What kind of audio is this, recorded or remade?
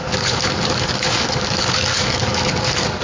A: remade